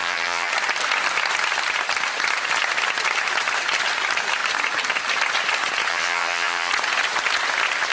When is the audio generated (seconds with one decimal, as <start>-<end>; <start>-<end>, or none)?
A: 0.0-0.5; 5.9-6.7